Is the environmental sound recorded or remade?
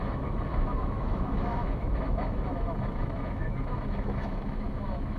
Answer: remade